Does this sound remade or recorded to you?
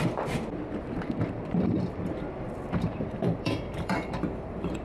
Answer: remade